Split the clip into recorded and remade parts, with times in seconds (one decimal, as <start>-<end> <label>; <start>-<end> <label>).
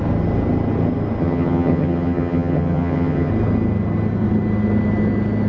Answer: 0.0-1.2 recorded; 1.2-3.3 remade; 3.3-5.5 recorded